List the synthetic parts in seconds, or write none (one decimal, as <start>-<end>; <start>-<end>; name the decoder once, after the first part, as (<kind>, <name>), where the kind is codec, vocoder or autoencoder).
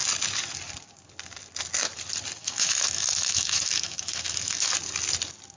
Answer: 2.4-4.7 (autoencoder, DAC-VAE)